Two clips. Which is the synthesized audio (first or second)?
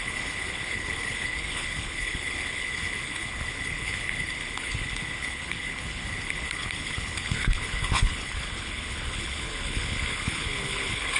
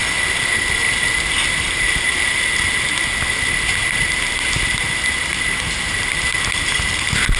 first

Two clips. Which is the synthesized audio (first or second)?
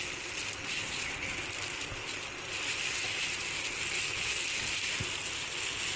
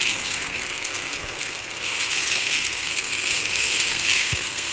second